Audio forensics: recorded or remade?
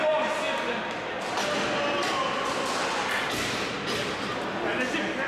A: recorded